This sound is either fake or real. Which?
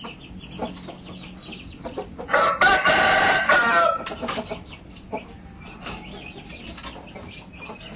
real